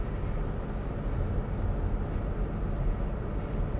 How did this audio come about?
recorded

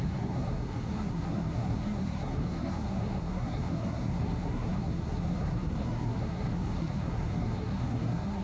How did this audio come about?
remade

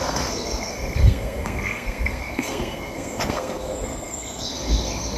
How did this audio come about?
remade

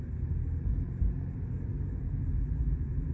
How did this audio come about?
recorded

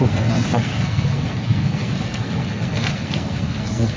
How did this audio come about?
remade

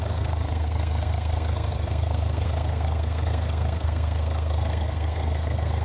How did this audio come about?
remade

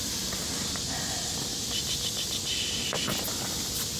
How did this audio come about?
recorded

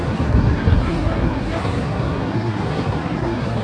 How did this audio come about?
remade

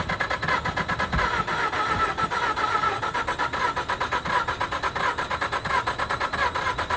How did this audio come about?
recorded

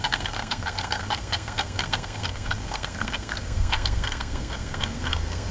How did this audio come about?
remade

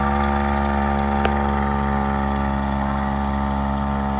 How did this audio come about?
recorded